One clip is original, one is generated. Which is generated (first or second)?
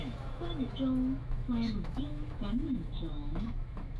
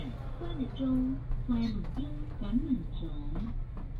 first